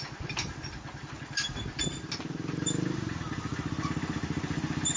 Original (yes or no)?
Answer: yes